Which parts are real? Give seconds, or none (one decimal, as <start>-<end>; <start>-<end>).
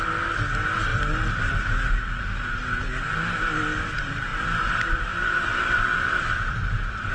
0.0-0.9; 2.2-4.3